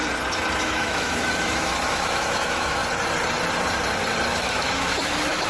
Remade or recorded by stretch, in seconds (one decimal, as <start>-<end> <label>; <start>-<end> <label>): 0.0-0.6 recorded; 0.6-2.8 remade; 2.8-4.3 recorded; 4.3-5.5 remade